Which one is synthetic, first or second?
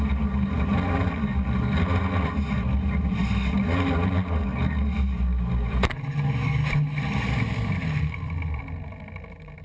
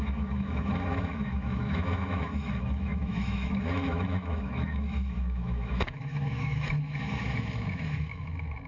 second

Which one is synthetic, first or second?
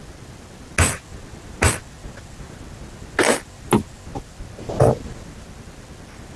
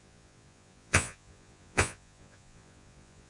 second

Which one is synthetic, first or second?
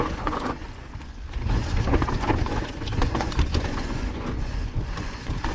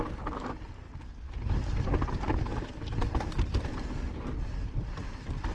first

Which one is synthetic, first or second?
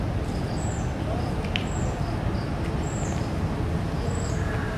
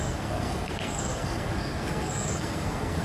second